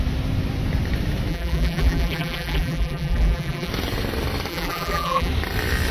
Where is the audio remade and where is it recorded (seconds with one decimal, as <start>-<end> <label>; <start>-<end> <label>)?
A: 0.0-1.3 recorded; 1.3-3.7 remade; 3.7-4.5 recorded; 4.5-5.3 remade; 5.3-5.9 recorded